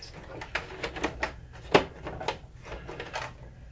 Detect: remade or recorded recorded